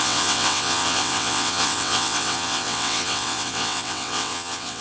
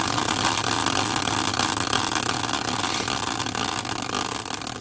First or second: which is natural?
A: second